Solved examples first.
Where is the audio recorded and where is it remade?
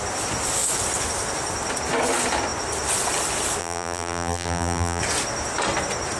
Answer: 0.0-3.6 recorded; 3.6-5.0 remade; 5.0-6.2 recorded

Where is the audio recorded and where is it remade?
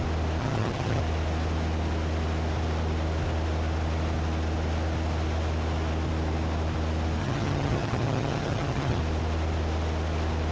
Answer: 0.0-0.4 recorded; 0.4-1.0 remade; 1.0-7.2 recorded; 7.2-9.0 remade; 9.0-10.5 recorded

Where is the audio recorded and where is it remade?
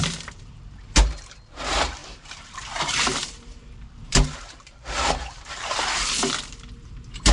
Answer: 0.0-7.3 remade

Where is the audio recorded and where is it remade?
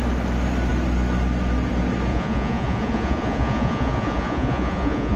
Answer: 0.0-2.1 recorded; 2.1-5.2 remade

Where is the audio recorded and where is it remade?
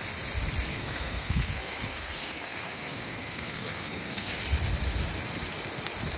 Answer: 0.0-0.7 recorded; 0.7-4.4 remade; 4.4-6.2 recorded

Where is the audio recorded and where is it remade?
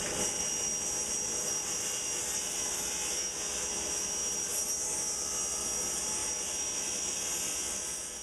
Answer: 0.0-8.2 recorded